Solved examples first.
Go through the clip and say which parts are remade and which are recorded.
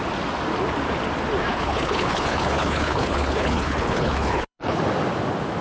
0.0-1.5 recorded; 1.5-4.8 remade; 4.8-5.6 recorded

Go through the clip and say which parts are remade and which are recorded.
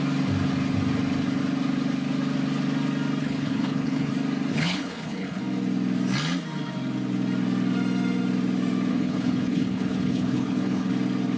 0.0-3.2 recorded; 3.2-4.1 remade; 4.1-4.5 recorded; 4.5-5.4 remade; 5.4-8.9 recorded; 8.9-10.9 remade; 10.9-11.4 recorded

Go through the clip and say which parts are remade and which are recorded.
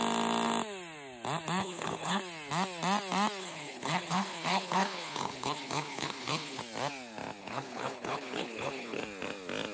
0.0-1.6 recorded; 1.6-2.2 remade; 2.2-3.4 recorded; 3.4-6.6 remade; 6.6-7.4 recorded; 7.4-9.0 remade; 9.0-9.7 recorded